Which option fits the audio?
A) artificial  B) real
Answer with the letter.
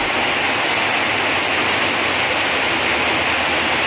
B